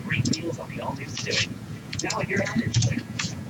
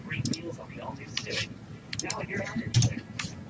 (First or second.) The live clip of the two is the second